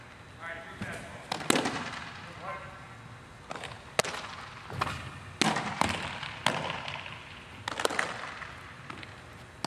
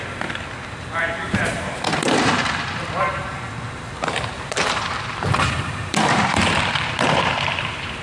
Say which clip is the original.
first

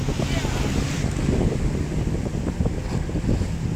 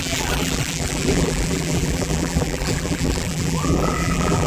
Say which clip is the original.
first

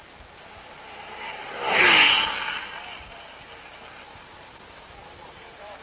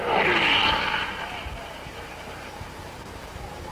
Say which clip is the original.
first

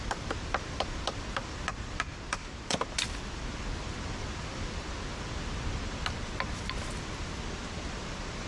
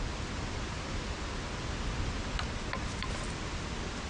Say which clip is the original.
second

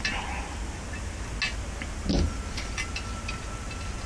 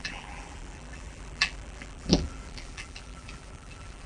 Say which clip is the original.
first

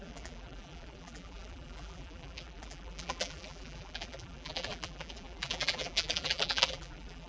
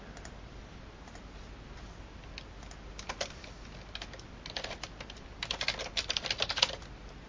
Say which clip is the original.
second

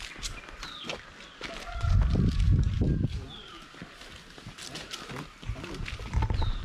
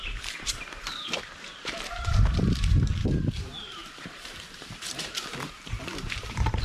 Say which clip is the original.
first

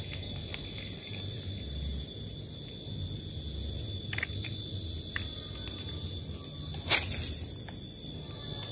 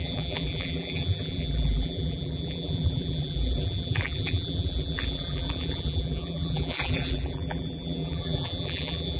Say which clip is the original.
first